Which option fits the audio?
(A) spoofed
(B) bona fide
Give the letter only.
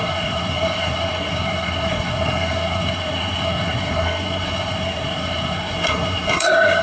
A